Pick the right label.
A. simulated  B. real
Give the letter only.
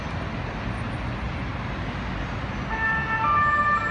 B